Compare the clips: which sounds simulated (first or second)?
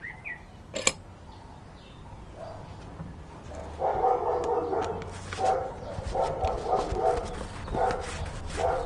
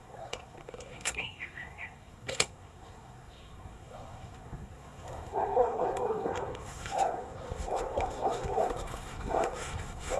second